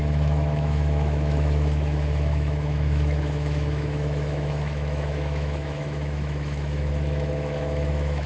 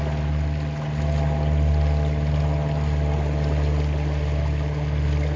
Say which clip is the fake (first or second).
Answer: first